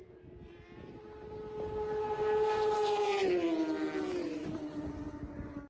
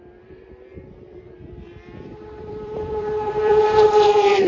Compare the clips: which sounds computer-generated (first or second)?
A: second